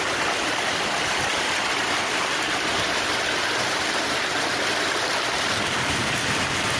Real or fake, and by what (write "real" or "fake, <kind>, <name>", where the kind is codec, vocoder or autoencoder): real